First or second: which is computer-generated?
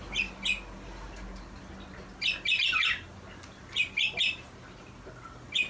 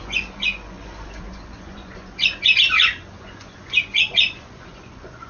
second